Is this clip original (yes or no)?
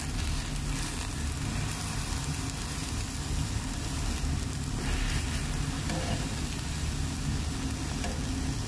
yes